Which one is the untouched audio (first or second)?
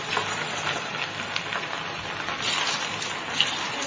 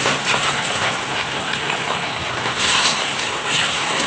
first